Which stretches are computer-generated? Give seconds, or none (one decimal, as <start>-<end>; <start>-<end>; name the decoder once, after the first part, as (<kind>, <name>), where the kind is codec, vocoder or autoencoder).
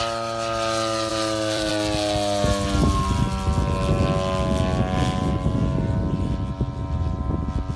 1.1-1.7 (vocoder, BigVGAN v2)